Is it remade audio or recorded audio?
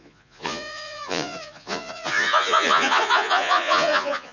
remade